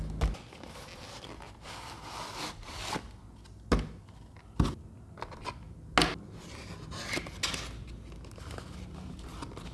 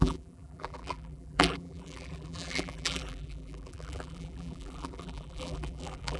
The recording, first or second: first